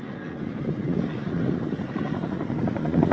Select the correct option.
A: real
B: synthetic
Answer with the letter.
B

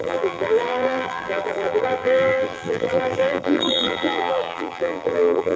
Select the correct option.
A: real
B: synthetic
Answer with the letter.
B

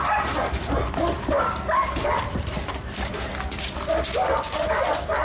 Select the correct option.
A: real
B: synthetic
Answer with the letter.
B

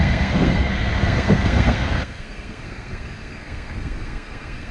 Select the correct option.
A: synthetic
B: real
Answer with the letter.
A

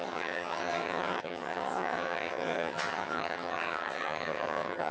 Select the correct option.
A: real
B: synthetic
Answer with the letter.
B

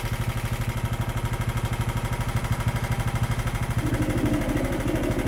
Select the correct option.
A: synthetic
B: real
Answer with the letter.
B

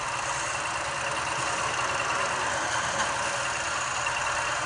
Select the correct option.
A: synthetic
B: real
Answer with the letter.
B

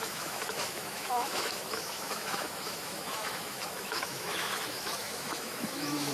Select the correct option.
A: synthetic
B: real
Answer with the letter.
A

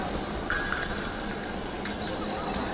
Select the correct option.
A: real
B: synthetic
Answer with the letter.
A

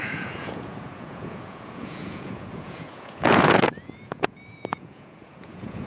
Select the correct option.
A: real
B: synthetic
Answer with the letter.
B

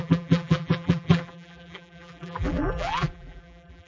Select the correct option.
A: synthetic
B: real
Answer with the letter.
A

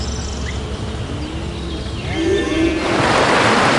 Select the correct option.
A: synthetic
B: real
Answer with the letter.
B